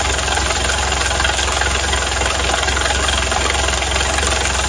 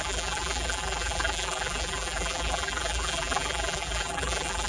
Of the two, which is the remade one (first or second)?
second